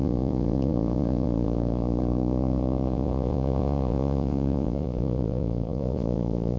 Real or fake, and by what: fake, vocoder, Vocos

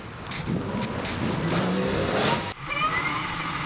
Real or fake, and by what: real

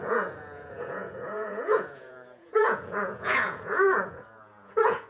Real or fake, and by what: fake, vocoder, Vocos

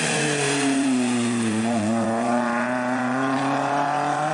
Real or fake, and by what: fake, vocoder, Vocos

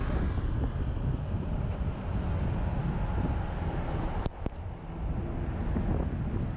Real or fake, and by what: real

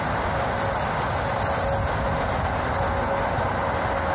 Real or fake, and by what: real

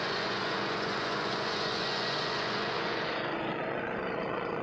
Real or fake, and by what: fake, vocoder, Vocos